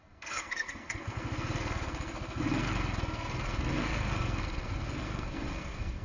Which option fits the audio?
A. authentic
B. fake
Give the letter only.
B